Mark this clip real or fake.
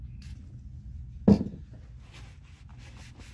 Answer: real